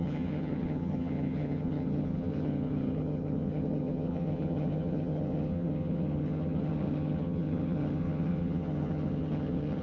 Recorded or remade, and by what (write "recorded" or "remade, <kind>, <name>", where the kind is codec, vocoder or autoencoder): remade, vocoder, HiFi-GAN